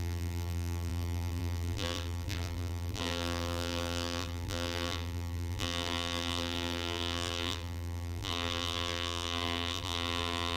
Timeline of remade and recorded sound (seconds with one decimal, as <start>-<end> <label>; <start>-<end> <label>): 0.0-10.6 remade